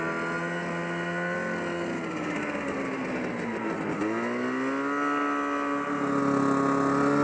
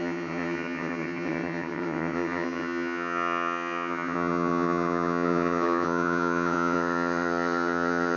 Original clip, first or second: first